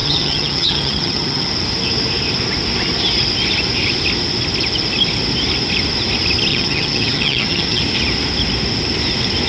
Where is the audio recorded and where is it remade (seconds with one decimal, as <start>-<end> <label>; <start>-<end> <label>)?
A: 0.0-1.5 remade; 1.5-6.5 recorded; 6.5-7.8 remade; 7.8-9.5 recorded